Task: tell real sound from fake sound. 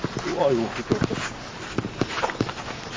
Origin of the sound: real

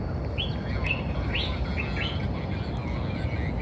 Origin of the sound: real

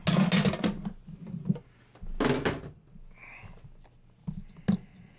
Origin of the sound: real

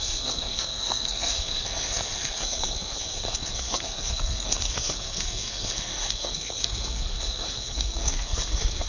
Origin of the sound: fake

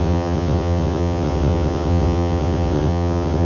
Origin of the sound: fake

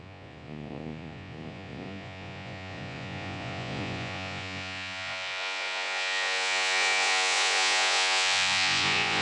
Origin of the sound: fake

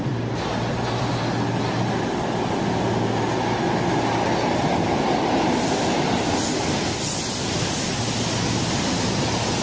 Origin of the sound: real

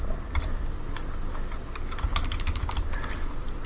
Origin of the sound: real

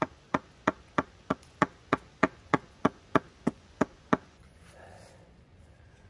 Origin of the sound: fake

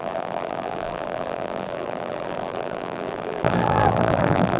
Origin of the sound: fake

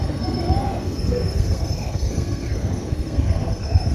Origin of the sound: fake